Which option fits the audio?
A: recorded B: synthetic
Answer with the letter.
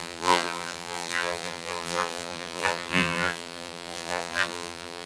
B